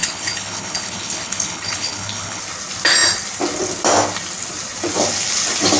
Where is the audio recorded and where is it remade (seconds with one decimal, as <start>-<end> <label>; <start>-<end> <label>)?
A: 0.0-2.4 remade; 2.4-5.8 recorded